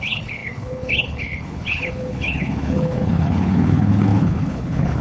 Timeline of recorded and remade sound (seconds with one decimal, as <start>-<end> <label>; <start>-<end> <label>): 0.0-5.0 remade